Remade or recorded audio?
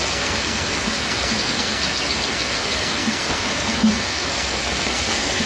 remade